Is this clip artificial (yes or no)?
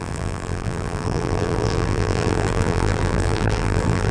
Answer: yes